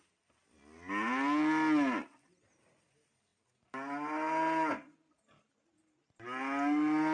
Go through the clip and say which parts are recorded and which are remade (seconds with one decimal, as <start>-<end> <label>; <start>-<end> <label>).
0.0-7.1 recorded